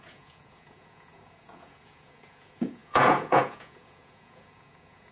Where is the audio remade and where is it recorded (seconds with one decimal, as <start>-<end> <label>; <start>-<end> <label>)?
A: 0.0-5.1 remade